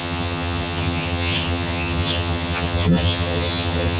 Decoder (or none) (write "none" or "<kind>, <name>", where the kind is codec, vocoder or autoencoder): vocoder, HiFi-GAN